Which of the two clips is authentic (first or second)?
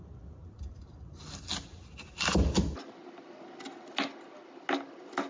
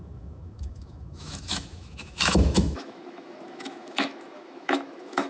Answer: first